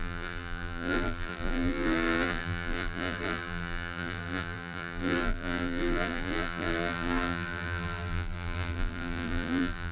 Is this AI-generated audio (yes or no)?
yes